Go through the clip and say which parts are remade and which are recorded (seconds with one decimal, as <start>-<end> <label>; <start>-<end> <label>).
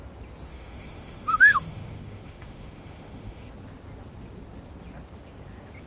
0.0-0.5 recorded; 0.5-3.5 remade; 3.5-5.9 recorded